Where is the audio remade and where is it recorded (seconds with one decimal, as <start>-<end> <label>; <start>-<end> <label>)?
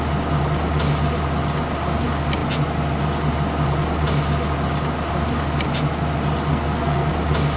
0.0-6.5 recorded; 6.5-7.1 remade; 7.1-7.6 recorded